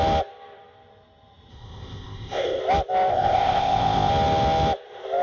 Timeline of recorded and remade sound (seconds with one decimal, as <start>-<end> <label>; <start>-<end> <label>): 0.0-1.5 recorded; 1.5-2.6 remade; 2.6-3.1 recorded; 3.1-4.1 remade; 4.1-5.2 recorded